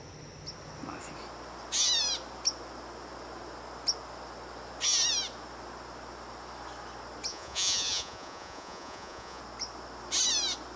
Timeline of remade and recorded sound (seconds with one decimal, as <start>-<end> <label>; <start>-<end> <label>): 0.0-7.3 recorded; 7.3-9.4 remade; 9.4-10.8 recorded